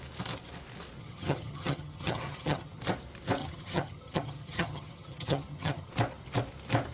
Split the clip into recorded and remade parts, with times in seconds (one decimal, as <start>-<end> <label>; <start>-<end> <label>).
0.0-1.0 recorded; 1.0-2.8 remade; 2.8-3.4 recorded; 3.4-5.9 remade; 5.9-6.9 recorded